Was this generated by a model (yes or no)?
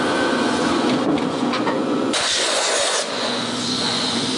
yes